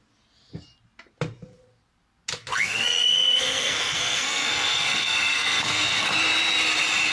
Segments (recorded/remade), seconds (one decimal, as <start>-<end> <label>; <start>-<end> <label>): 0.0-2.5 recorded; 2.5-6.1 remade; 6.1-7.1 recorded